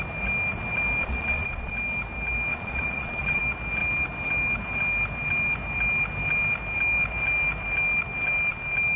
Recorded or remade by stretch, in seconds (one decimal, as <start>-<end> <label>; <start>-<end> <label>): 0.0-1.0 recorded; 1.0-1.7 remade; 1.7-2.5 recorded; 2.5-3.4 remade; 3.4-9.0 recorded